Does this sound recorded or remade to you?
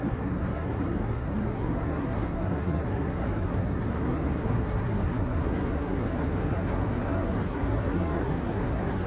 remade